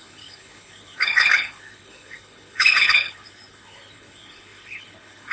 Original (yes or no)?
no